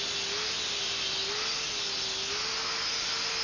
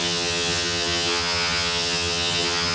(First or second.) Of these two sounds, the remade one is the second